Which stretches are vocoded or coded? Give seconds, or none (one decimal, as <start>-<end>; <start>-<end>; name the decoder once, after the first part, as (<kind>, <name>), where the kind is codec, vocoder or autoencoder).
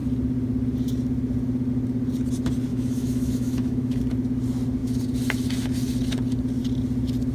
2.7-4.0 (autoencoder, DAC-VAE)